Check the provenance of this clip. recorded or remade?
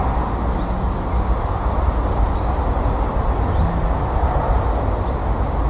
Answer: recorded